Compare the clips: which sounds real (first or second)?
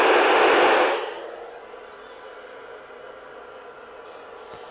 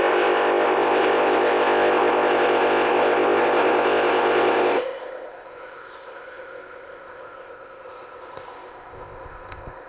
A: first